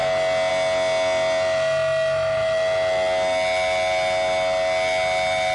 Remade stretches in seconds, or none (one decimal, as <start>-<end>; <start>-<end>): none